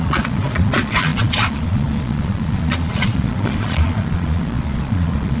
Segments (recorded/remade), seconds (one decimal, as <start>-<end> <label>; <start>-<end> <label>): 0.0-5.4 remade